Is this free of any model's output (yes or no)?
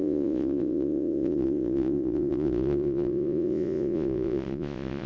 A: no